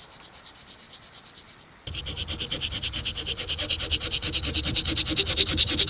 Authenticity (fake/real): real